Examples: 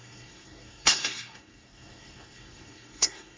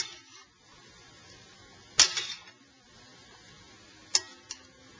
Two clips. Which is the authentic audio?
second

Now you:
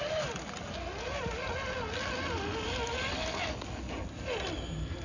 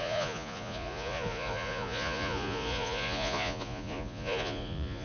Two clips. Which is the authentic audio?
first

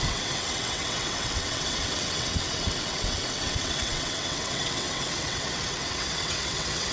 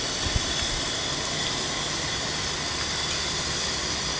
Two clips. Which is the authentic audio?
second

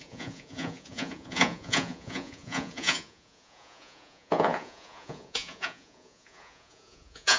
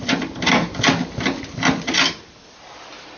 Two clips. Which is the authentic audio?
second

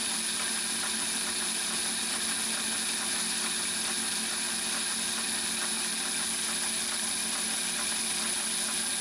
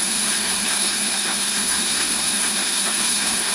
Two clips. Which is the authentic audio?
first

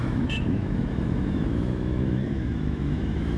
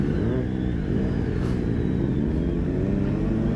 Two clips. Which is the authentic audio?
second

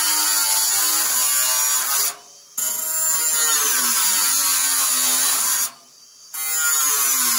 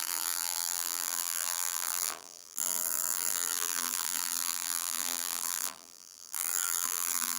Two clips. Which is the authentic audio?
first